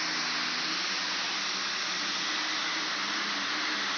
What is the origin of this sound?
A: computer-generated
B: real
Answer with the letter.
B